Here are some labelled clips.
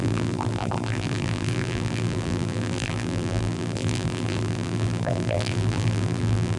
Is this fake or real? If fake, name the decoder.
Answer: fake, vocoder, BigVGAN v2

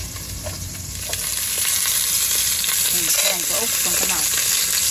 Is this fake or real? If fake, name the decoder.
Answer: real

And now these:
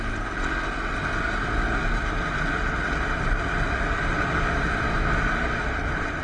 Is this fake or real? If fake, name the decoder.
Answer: real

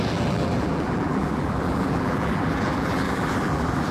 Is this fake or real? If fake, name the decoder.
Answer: fake, vocoder, BigVGAN v2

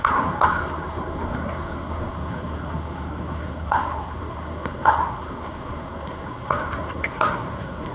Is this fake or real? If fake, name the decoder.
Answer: fake, codec, SNAC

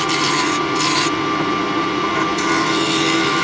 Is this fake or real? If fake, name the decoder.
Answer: real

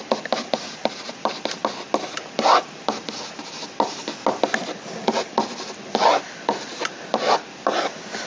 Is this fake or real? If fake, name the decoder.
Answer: real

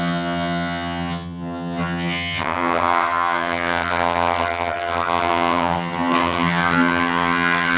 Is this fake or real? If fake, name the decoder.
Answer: fake, vocoder, HiFi-GAN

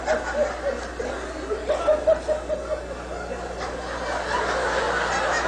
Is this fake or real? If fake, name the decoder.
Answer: real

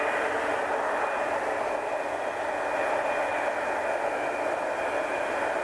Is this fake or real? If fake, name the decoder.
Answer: real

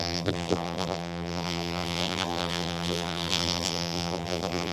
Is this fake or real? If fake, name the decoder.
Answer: fake, vocoder, BigVGAN v2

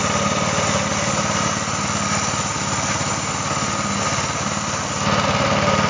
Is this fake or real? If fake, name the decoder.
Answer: real